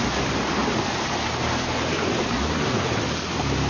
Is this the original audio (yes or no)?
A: yes